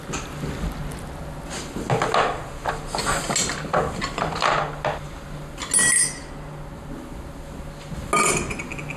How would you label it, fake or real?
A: real